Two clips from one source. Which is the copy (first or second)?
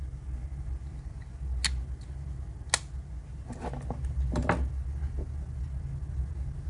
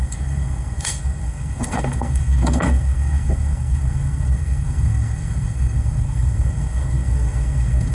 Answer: second